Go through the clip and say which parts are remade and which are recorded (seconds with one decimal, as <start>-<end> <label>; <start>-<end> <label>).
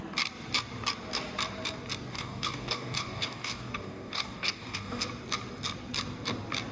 0.0-2.1 recorded; 2.1-5.0 remade; 5.0-6.7 recorded